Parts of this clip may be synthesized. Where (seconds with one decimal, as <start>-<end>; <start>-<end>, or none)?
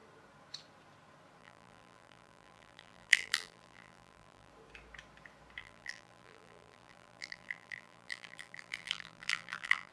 1.4-4.5; 5.6-9.9